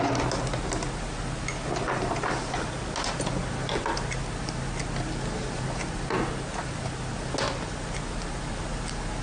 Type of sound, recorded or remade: recorded